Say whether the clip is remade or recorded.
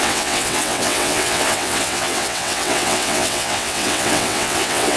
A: remade